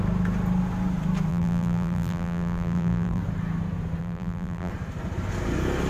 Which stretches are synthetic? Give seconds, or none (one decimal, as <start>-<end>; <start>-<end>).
1.3-3.2; 4.0-4.7